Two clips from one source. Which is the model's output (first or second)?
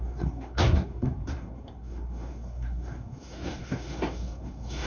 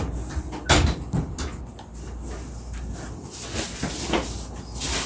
first